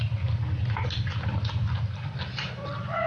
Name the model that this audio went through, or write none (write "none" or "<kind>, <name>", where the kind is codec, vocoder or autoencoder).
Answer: none